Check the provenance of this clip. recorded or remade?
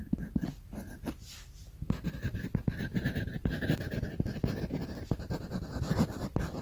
recorded